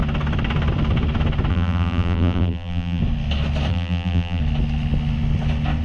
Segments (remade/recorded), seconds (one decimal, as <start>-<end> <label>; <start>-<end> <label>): 0.0-1.5 recorded; 1.5-3.0 remade; 3.0-3.7 recorded; 3.7-4.4 remade; 4.4-5.8 recorded